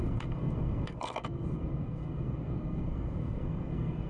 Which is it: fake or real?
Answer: fake